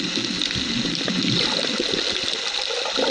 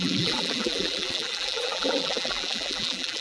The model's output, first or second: second